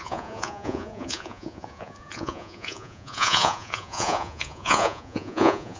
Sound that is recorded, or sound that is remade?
remade